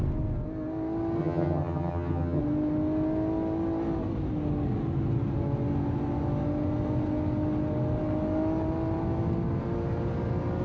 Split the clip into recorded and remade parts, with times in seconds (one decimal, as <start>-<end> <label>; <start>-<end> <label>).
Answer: 0.0-1.2 recorded; 1.2-2.4 remade; 2.4-10.6 recorded